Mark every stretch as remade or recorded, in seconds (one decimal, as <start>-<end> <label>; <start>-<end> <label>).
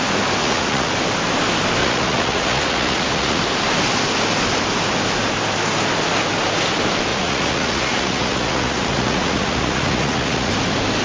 0.0-0.4 recorded; 0.4-0.9 remade; 0.9-1.8 recorded; 1.8-3.4 remade; 3.4-7.1 recorded; 7.1-10.5 remade; 10.5-11.0 recorded